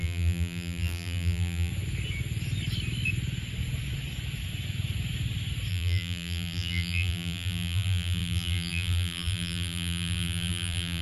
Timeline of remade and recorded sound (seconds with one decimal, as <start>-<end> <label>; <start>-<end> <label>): 0.0-1.7 remade; 1.7-5.7 recorded; 5.7-11.0 remade